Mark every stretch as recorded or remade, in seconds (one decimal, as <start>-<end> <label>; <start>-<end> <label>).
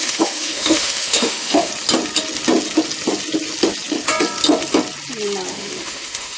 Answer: 0.0-1.7 remade; 1.7-5.5 recorded; 5.5-6.4 remade